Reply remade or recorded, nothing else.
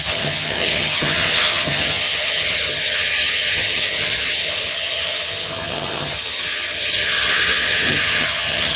remade